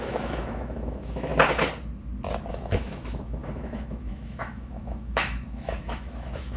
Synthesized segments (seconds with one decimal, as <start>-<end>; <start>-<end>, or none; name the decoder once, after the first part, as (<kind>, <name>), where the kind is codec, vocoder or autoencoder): 0.0-1.3 (autoencoder, DAC-VAE); 2.5-6.6